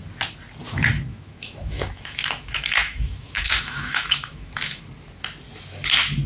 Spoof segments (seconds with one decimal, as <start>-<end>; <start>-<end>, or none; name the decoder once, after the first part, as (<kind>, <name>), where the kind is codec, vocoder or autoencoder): 1.1-4.8 (autoencoder, DAC-VAE)

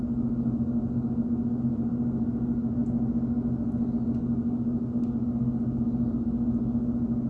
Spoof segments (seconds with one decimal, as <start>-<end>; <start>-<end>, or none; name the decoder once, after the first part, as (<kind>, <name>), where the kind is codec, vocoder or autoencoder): none

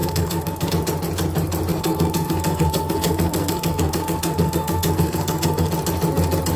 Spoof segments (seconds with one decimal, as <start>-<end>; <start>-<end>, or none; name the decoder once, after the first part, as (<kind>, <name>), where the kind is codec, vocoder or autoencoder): 0.0-0.7 (codec, SNAC); 1.7-5.7